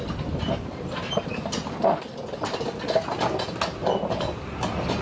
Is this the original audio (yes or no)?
yes